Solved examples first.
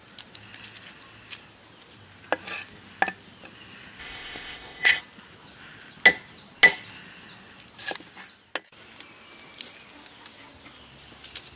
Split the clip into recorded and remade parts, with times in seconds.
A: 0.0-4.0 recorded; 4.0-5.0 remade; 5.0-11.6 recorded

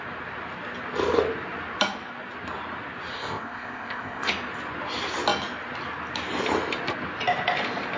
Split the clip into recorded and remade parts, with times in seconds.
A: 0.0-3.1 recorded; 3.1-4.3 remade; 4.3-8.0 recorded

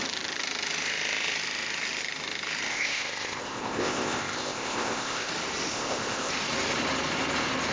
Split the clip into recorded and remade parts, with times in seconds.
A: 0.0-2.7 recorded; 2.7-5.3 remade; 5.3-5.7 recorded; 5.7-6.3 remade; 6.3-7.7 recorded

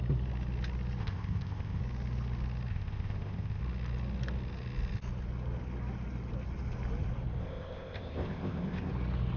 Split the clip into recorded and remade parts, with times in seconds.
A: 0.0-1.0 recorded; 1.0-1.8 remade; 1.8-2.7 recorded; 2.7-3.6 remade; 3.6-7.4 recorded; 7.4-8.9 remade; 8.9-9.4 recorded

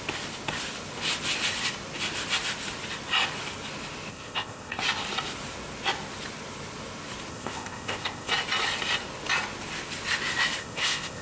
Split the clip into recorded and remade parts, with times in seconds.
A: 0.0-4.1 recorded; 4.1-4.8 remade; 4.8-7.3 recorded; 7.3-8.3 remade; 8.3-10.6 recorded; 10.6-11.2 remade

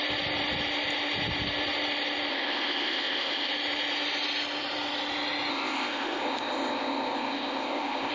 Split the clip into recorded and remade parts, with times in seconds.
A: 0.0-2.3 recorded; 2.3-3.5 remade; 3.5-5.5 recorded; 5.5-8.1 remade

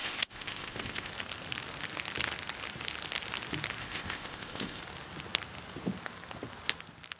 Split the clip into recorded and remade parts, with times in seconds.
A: 0.0-1.1 remade; 1.1-3.8 recorded; 3.8-4.8 remade; 4.8-7.2 recorded

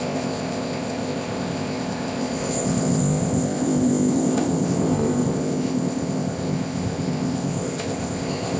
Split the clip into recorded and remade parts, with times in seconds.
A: 0.0-8.6 remade